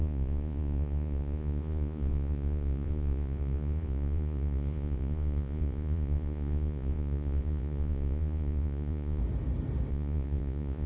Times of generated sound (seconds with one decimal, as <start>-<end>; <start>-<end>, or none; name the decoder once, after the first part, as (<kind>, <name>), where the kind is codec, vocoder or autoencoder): 0.0-9.2 (vocoder, Vocos); 9.9-10.9